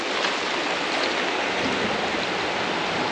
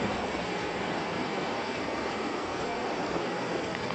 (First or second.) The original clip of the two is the first